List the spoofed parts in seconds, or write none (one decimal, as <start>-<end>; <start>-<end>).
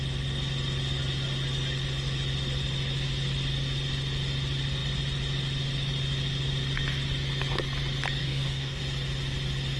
8.2-8.8